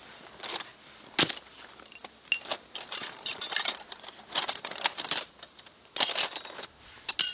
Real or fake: real